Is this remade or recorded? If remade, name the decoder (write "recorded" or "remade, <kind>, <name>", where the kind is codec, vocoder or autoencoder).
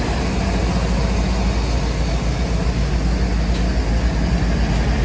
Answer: recorded